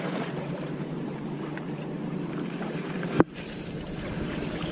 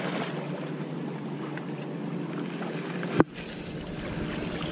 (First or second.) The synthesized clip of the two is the first